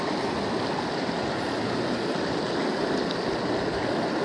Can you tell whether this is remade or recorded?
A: recorded